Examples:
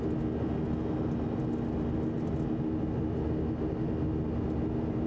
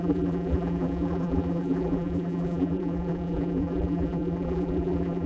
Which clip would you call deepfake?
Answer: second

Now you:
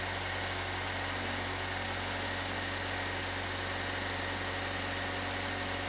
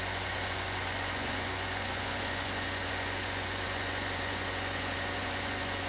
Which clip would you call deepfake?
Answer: second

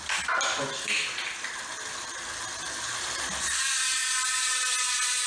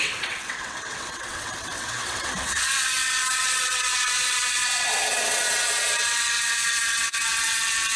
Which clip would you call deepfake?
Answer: second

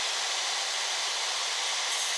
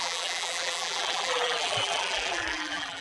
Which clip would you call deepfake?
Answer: second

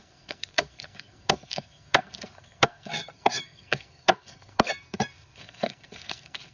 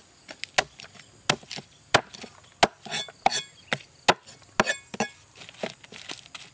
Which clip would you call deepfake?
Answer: first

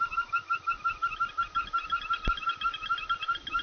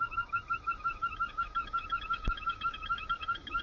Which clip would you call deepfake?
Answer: second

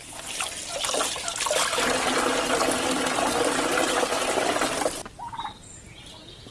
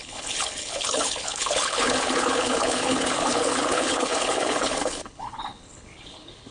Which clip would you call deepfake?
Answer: second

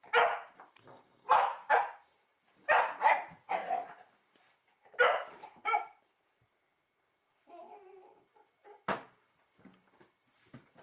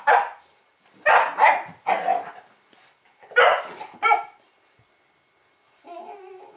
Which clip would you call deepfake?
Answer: first